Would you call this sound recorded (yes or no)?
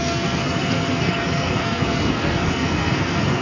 no